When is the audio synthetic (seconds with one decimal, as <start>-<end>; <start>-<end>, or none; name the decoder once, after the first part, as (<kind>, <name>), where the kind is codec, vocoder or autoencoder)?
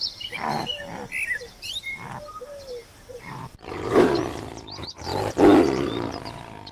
2.8-4.2 (vocoder, BigVGAN v2)